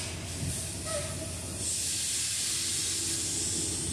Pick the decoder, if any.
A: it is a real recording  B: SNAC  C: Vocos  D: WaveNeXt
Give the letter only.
A